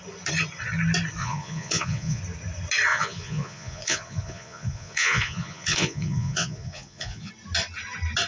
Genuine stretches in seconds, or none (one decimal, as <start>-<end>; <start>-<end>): 0.0-1.2; 2.2-2.9; 7.3-8.3